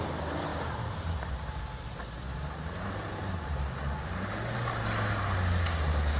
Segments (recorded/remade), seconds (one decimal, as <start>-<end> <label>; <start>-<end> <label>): 0.0-0.5 recorded; 0.5-1.3 remade; 1.3-2.3 recorded; 2.3-4.3 remade; 4.3-6.2 recorded